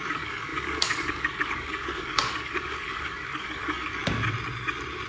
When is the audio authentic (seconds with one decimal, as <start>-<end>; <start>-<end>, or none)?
4.0-5.1